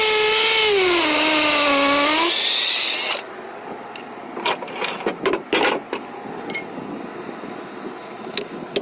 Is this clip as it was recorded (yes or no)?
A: yes